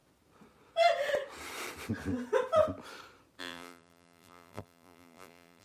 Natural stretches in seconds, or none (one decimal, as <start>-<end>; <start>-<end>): 0.0-3.4